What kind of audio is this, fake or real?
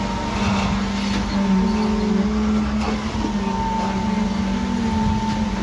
real